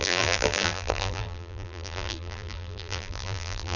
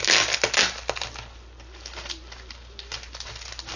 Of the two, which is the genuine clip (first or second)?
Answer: second